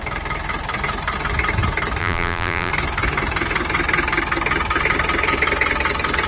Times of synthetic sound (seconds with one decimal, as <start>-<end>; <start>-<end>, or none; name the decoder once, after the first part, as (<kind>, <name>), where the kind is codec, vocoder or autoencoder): 2.0-2.7 (vocoder, BigVGAN v2)